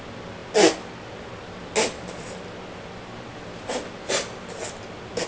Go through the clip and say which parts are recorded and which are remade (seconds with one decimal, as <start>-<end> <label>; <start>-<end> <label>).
0.0-5.3 recorded